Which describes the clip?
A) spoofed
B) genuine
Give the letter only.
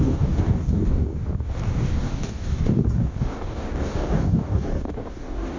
A